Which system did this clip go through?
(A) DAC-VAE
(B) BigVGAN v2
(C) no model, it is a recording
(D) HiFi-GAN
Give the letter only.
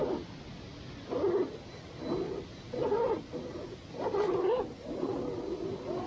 C